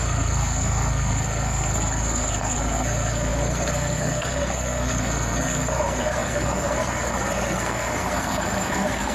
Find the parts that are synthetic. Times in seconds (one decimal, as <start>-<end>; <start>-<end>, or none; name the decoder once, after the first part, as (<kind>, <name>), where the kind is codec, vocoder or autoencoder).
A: 0.0-9.1 (codec, SNAC)